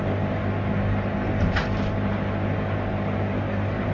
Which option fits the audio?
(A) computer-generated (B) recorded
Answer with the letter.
B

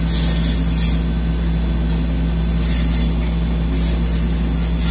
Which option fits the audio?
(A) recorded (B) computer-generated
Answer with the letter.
A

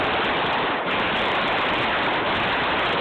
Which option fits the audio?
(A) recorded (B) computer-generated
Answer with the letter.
A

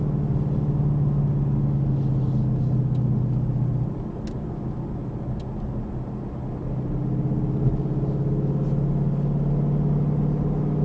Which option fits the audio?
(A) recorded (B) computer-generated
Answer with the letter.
A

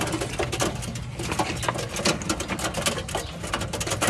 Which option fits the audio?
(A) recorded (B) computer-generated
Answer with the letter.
A